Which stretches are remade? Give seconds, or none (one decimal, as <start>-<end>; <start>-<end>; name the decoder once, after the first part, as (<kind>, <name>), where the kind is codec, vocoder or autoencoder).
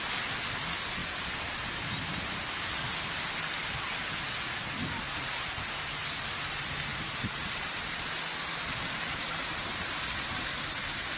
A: 6.9-8.0 (vocoder, BigVGAN v2)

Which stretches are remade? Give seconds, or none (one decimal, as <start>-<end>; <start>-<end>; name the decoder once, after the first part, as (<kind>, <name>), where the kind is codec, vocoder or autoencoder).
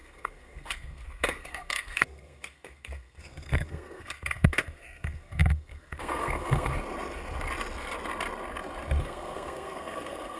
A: 0.0-6.7 (codec, SNAC); 9.0-10.4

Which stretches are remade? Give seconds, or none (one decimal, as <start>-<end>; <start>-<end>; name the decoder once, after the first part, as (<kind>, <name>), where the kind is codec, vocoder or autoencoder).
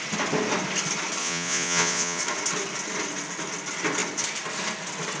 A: 1.2-2.2 (vocoder, Vocos)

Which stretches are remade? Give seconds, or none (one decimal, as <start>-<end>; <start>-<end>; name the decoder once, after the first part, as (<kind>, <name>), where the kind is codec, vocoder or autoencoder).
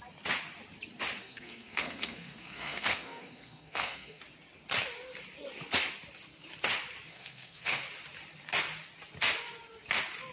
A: 1.2-4.2 (codec, SNAC); 7.1-7.8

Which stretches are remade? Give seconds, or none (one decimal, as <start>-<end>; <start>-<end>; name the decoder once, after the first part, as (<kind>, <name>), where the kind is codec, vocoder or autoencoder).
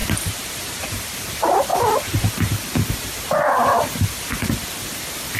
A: 0.0-1.7 (vocoder, BigVGAN v2); 2.3-2.7; 3.8-5.4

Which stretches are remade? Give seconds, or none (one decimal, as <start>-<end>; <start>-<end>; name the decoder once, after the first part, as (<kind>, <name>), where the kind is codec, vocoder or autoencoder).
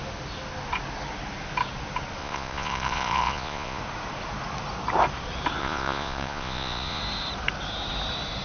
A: 2.2-3.8 (vocoder, Vocos); 5.6-7.0